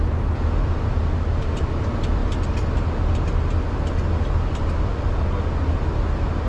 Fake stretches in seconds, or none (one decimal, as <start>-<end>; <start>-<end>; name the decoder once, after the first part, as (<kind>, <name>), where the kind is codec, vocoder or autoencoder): none